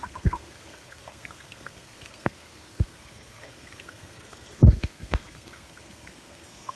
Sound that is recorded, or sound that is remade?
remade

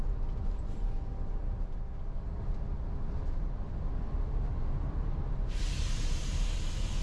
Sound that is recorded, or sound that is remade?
recorded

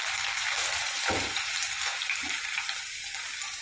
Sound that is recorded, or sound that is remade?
recorded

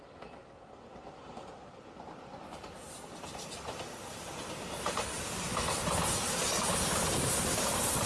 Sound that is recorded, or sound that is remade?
remade